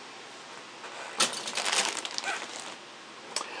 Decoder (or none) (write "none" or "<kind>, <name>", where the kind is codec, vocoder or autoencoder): none